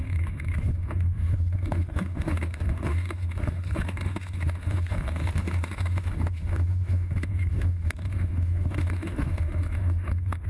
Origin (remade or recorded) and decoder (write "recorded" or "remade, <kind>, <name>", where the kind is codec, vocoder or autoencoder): remade, autoencoder, DAC-VAE